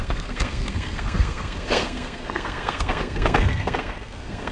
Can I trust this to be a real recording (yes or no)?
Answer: no